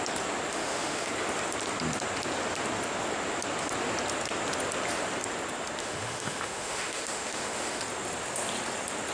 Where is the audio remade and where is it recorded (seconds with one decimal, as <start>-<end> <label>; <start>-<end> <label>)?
0.0-0.5 recorded; 0.5-1.1 remade; 1.1-5.8 recorded; 5.8-7.8 remade; 7.8-9.1 recorded